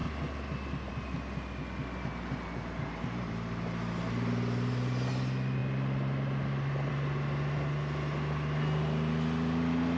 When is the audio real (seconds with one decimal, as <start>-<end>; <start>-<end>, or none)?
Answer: 0.0-10.0